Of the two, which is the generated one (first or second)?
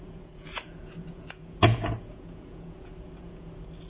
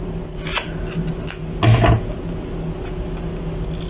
first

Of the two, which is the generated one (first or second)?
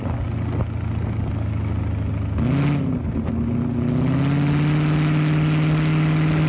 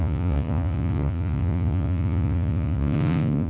second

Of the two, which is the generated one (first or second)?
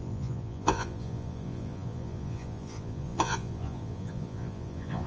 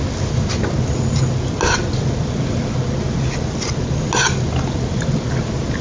first